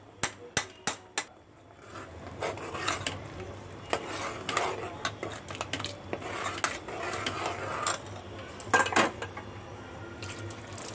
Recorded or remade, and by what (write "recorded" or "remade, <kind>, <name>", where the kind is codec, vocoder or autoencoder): recorded